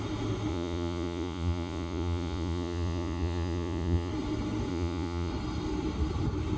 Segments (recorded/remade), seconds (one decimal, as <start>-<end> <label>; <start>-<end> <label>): 0.0-0.5 recorded; 0.5-4.1 remade; 4.1-4.7 recorded; 4.7-5.3 remade; 5.3-6.6 recorded